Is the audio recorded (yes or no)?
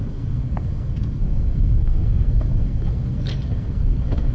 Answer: no